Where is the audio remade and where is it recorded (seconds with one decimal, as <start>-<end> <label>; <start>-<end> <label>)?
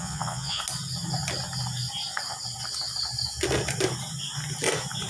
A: 0.0-0.6 remade; 0.6-5.1 recorded